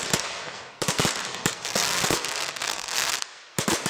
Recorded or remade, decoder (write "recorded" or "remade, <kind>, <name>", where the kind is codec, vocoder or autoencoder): remade, codec, SNAC